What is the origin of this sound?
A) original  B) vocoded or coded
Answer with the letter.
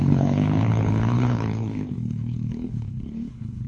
B